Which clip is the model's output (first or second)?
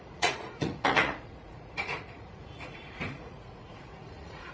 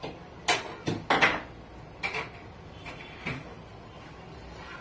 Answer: first